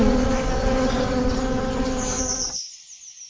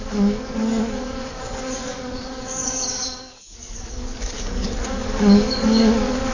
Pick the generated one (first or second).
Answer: second